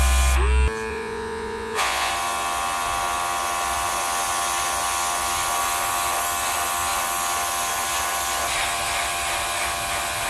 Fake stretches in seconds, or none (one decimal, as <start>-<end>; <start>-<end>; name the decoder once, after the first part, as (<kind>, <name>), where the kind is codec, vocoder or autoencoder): 0.9-2.1 (vocoder, Vocos)